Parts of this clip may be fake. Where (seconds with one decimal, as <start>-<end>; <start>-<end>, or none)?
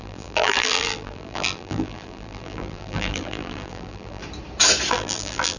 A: 0.0-4.2; 4.9-5.6